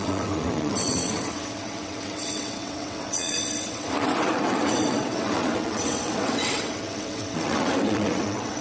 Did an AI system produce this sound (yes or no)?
yes